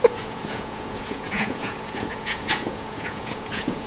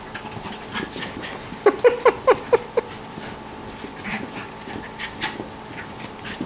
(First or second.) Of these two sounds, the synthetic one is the first